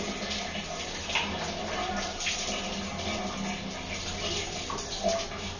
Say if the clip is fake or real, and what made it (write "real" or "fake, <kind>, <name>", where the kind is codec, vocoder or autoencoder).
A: real